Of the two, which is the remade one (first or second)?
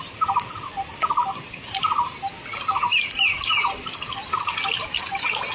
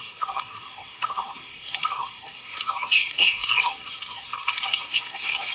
second